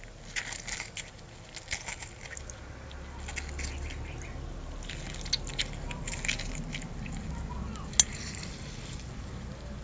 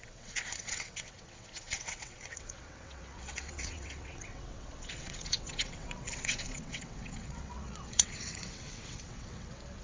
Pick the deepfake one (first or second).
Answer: second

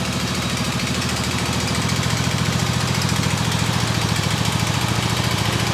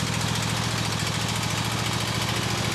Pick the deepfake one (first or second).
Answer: first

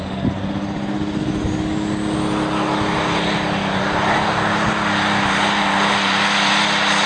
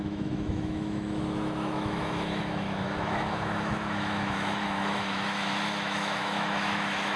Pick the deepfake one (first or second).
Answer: second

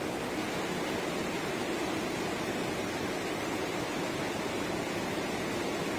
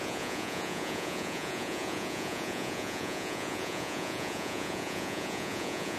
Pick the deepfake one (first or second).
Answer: second